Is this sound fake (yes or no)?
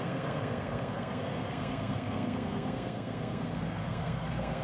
yes